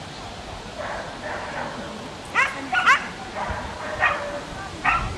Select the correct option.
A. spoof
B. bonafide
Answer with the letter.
B